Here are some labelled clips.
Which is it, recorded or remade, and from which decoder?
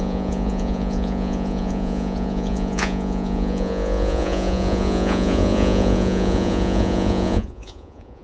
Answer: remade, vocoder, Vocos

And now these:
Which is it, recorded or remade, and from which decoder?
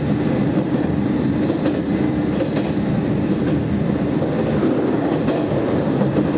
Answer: recorded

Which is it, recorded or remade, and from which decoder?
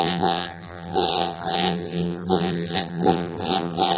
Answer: remade, vocoder, BigVGAN v2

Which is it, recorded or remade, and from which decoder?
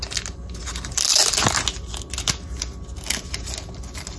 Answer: recorded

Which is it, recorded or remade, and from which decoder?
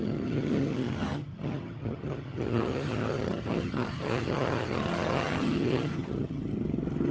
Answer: remade, vocoder, HiFi-GAN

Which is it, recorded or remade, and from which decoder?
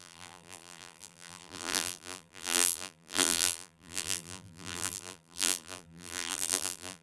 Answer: remade, vocoder, BigVGAN v2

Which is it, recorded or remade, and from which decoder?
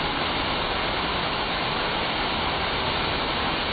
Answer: recorded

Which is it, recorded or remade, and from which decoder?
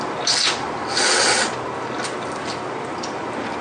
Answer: recorded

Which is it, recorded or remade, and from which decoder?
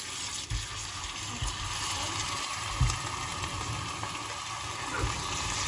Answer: recorded